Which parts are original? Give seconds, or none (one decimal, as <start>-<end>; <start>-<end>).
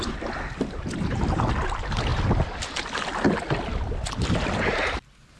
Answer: 2.1-5.4